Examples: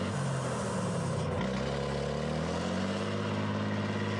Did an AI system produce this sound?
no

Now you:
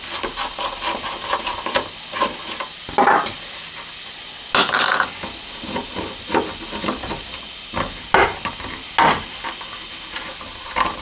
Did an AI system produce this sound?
no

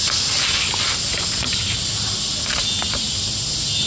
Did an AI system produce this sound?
yes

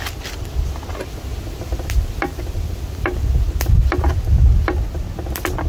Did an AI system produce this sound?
no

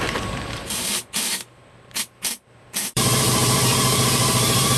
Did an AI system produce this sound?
yes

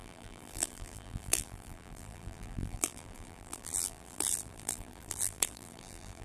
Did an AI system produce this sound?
yes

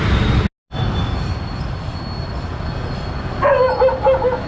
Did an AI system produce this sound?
no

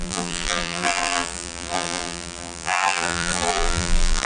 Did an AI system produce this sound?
yes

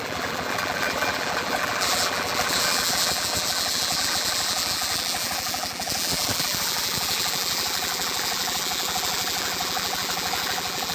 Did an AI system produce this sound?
yes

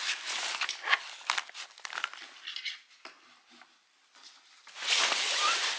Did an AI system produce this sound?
no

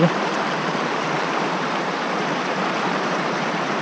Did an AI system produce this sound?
yes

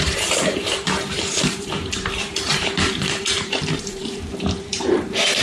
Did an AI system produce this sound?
yes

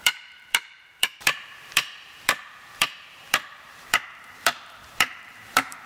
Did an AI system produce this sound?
yes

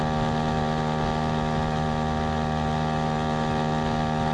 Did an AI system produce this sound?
no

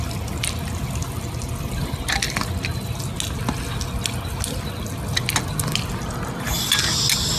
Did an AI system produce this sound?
no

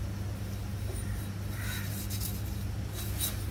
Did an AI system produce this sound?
no